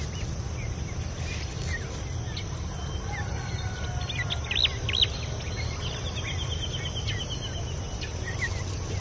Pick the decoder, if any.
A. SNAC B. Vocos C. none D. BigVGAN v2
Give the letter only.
C